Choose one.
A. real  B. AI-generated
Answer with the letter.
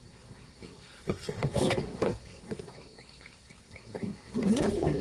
B